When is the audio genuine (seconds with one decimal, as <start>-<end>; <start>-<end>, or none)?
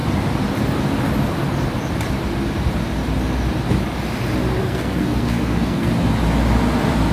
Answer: 0.0-4.6; 5.9-7.1